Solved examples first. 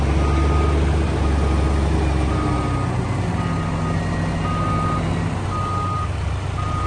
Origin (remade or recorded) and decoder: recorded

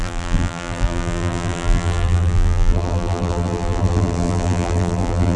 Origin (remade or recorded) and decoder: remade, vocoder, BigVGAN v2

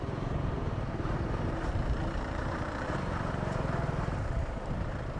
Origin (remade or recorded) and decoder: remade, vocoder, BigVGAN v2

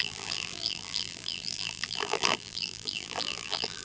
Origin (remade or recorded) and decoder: remade, vocoder, BigVGAN v2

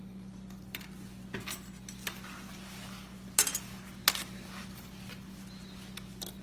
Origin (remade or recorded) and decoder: recorded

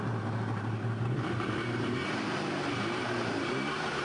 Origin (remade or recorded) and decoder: remade, vocoder, BigVGAN v2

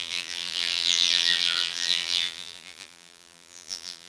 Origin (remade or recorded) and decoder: remade, vocoder, BigVGAN v2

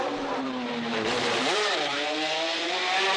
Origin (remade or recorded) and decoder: remade, vocoder, BigVGAN v2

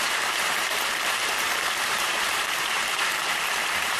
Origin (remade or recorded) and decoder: remade, vocoder, BigVGAN v2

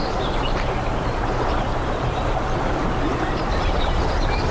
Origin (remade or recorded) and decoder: remade, vocoder, BigVGAN v2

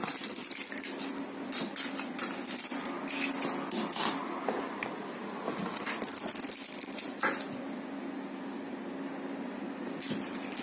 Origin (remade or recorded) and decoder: recorded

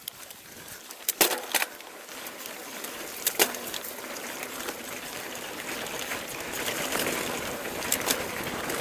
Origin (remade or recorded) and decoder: remade, vocoder, BigVGAN v2